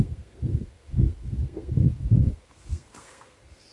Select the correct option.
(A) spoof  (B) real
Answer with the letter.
A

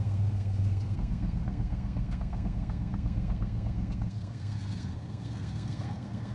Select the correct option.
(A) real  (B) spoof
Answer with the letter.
B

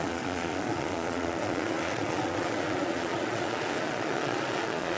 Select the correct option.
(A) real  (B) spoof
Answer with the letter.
B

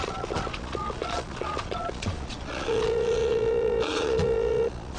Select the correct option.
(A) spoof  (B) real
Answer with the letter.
A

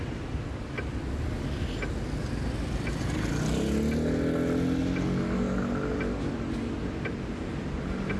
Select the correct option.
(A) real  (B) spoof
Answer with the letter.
A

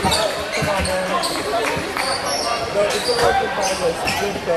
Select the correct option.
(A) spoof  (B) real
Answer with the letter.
A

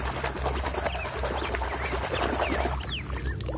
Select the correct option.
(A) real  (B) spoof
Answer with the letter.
A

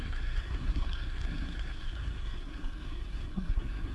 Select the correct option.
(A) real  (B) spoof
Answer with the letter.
B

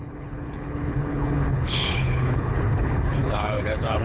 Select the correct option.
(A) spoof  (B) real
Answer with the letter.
A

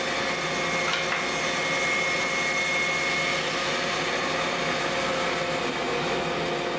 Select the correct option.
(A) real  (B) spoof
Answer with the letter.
A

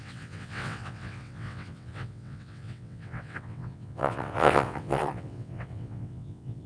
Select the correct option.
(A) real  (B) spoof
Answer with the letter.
B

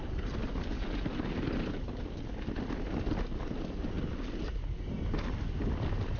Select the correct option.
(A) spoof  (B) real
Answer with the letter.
B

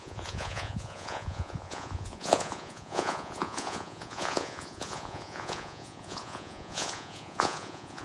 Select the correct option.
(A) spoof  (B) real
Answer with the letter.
A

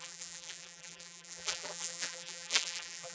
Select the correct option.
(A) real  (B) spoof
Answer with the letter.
B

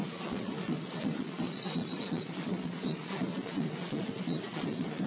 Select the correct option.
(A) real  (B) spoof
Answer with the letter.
B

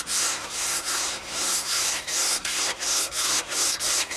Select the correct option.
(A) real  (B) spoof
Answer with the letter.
B